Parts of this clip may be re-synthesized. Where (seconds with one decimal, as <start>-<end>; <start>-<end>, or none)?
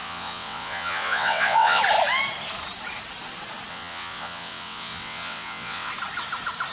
0.0-1.8; 3.7-5.9